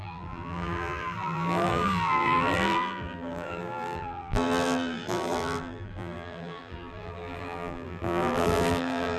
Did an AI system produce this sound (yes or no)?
yes